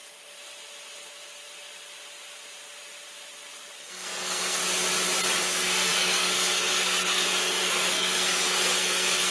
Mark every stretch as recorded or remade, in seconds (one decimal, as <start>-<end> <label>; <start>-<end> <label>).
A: 0.0-3.8 recorded; 3.8-4.6 remade; 4.6-5.4 recorded; 5.4-9.3 remade